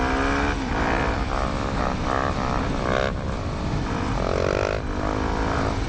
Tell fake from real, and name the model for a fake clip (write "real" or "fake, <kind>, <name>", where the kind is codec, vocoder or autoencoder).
real